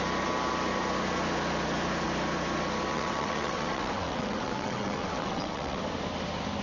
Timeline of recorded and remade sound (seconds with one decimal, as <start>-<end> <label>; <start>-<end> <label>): 0.0-2.9 recorded; 2.9-5.8 remade; 5.8-6.6 recorded